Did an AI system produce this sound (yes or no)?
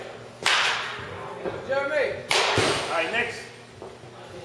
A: no